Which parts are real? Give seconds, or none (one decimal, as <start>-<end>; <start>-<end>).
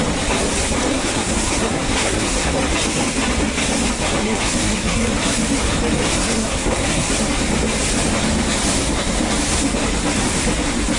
0.0-0.9; 2.5-4.2; 5.1-6.1; 7.1-11.0